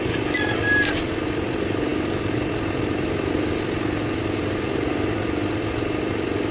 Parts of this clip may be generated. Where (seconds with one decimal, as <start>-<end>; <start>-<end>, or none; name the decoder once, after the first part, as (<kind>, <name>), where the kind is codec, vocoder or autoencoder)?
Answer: none

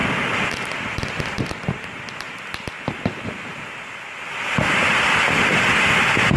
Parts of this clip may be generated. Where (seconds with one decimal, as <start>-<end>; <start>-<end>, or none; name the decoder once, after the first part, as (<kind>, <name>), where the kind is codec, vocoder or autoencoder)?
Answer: none

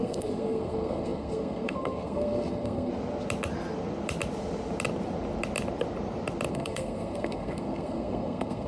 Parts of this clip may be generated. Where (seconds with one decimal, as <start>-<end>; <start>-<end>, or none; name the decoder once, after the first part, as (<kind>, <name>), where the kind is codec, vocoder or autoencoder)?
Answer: 0.0-2.9 (codec, SNAC); 6.5-8.7

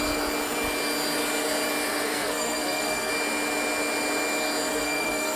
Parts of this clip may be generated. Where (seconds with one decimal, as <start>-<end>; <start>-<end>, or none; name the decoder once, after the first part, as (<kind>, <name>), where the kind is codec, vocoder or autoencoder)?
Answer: 1.9-3.1 (codec, SNAC); 4.7-5.4